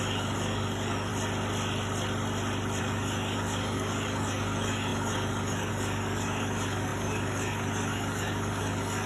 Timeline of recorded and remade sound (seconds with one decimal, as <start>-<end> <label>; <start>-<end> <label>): 0.0-1.1 remade; 1.1-2.8 recorded; 2.8-9.1 remade